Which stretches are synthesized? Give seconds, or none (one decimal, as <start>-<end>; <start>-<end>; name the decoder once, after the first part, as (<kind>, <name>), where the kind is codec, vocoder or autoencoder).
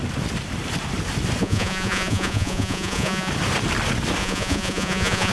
1.4-3.3 (vocoder, Vocos); 4.2-5.3